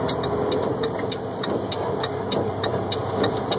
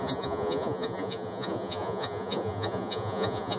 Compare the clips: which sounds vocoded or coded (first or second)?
second